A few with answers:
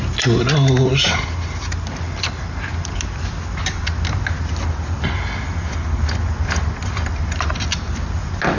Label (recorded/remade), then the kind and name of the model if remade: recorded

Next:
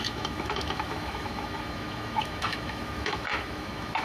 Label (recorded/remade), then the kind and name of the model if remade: remade, autoencoder, DAC-VAE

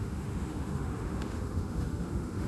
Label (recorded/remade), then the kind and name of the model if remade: remade, autoencoder, DAC-VAE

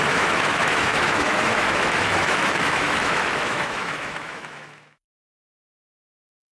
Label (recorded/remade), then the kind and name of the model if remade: remade, autoencoder, DAC-VAE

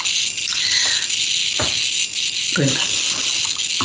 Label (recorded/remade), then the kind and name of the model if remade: recorded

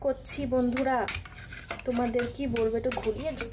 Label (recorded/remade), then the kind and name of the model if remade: recorded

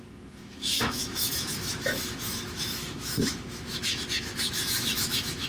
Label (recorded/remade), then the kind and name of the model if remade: remade, autoencoder, DAC-VAE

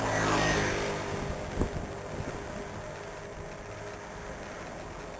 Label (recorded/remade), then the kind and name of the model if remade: recorded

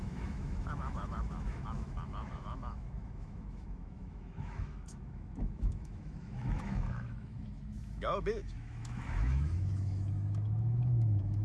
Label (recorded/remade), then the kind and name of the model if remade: remade, autoencoder, DAC-VAE